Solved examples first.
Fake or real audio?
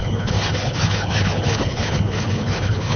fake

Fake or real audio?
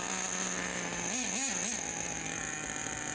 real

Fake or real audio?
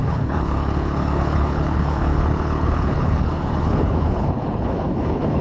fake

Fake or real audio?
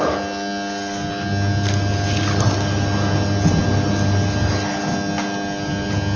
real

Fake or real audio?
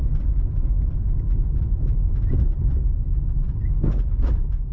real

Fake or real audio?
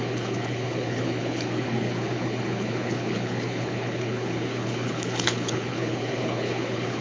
fake